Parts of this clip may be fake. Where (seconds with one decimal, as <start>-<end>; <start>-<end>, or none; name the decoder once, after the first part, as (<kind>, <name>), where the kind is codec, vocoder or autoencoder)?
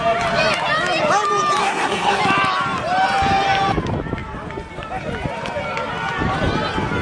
1.6-2.2 (codec, SNAC)